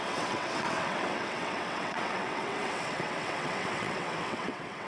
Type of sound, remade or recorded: remade